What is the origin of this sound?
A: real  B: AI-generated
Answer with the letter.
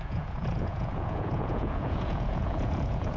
B